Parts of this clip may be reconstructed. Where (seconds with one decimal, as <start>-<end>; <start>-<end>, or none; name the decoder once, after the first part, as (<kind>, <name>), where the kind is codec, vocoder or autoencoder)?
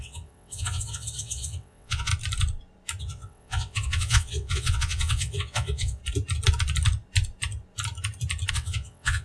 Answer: 0.0-2.1 (vocoder, WaveNeXt); 3.0-6.0; 8.5-9.2